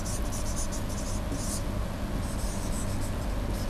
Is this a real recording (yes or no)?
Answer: yes